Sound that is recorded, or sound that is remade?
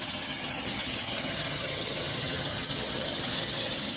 remade